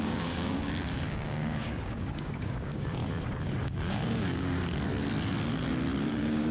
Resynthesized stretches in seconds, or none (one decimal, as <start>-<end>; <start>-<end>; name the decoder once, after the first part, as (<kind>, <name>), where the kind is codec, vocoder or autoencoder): 0.0-3.0 (codec, DAC); 3.6-4.6; 6.1-6.5